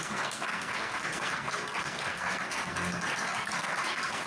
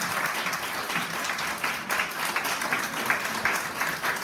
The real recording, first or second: second